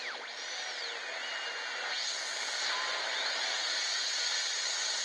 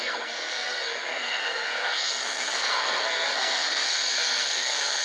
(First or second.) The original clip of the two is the first